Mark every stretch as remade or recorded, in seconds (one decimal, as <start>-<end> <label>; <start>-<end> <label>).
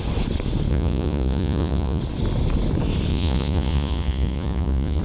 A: 0.0-0.7 recorded; 0.7-2.0 remade; 2.0-3.1 recorded; 3.1-5.0 remade